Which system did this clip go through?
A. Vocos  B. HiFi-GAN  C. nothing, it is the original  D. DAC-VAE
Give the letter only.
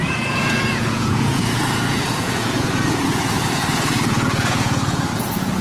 A